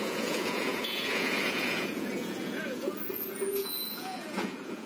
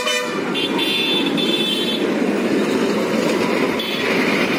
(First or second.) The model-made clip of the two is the first